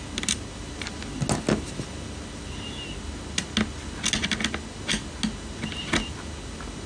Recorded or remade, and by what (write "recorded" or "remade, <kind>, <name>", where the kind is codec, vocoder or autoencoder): recorded